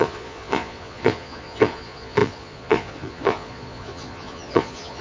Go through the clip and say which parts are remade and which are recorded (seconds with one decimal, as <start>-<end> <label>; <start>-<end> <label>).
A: 0.0-5.0 remade